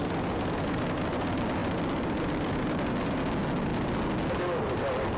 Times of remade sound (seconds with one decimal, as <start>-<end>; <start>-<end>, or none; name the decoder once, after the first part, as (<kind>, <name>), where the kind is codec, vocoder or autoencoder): none